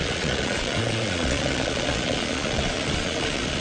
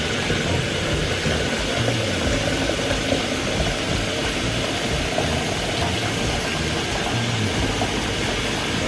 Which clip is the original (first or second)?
second